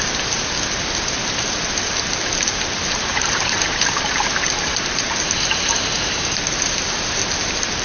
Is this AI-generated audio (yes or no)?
yes